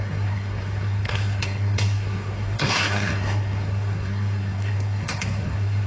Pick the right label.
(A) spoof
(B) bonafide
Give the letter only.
A